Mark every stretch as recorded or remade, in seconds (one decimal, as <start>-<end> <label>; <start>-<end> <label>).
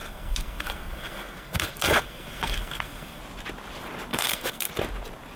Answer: 0.0-3.2 remade; 3.2-4.1 recorded; 4.1-4.7 remade; 4.7-5.4 recorded